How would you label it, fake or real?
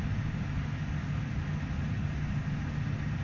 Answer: real